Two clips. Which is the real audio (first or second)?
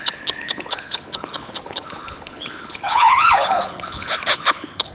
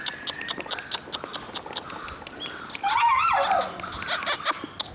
second